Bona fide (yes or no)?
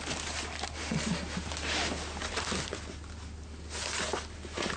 yes